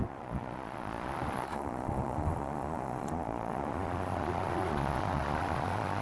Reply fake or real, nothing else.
fake